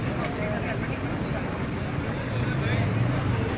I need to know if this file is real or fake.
real